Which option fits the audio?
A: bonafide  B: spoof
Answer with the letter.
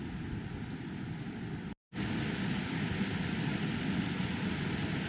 A